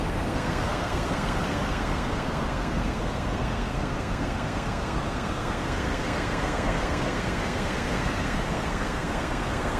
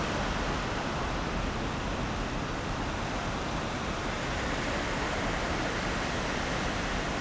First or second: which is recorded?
second